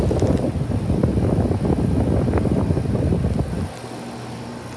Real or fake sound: real